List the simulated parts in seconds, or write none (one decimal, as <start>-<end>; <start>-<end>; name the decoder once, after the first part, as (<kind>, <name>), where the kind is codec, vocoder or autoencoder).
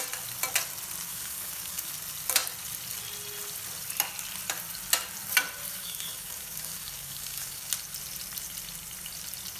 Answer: 1.1-1.9 (codec, DAC); 5.7-7.7